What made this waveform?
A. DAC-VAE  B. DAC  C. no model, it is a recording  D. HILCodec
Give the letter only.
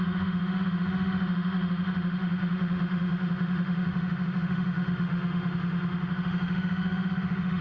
A